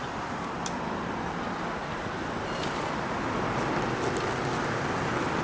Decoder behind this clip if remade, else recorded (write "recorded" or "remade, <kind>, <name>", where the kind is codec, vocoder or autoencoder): recorded